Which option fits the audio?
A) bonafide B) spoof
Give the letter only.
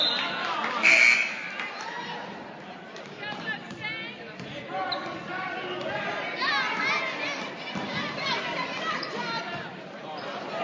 A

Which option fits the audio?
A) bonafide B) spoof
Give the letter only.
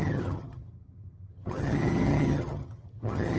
B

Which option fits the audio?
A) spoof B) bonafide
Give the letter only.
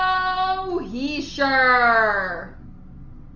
B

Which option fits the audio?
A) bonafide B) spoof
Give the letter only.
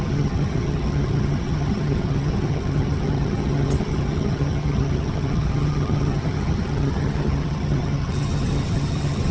B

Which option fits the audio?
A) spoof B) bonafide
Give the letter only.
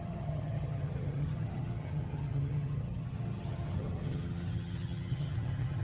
A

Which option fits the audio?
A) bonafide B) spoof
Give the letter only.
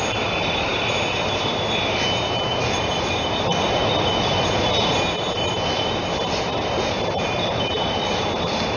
A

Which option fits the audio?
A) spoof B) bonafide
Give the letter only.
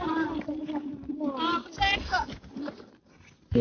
B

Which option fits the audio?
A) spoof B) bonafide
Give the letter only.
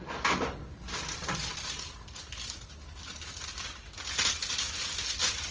B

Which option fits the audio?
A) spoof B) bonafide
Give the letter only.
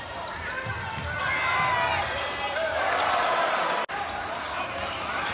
B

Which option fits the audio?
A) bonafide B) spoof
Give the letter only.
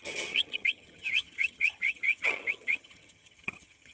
B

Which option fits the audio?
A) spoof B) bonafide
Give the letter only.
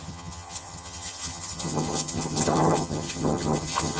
A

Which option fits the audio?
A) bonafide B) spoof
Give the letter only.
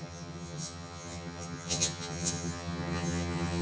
B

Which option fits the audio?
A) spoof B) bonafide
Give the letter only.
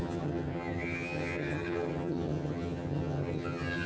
A